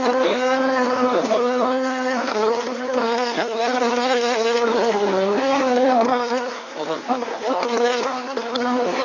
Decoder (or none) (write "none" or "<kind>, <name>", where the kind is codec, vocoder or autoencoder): codec, SNAC